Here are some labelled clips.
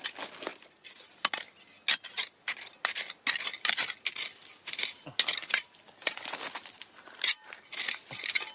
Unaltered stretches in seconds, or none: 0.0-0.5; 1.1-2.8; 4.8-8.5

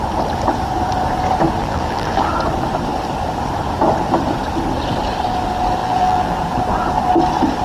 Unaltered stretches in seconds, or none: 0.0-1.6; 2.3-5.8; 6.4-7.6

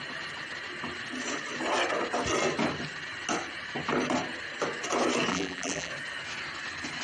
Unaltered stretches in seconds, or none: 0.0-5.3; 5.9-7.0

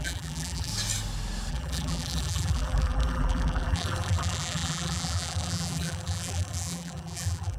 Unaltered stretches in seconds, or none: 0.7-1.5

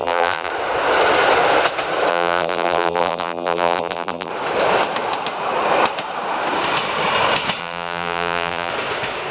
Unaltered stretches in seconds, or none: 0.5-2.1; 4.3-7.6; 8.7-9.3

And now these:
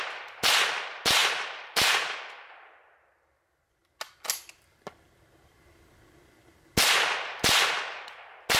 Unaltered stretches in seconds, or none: 0.0-1.2; 2.2-8.6